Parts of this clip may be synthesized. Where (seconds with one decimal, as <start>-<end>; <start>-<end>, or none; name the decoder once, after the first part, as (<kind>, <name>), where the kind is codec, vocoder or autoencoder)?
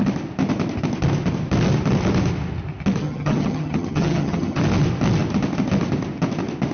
3.0-4.6 (vocoder, HiFi-GAN)